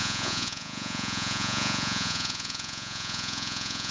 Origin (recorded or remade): remade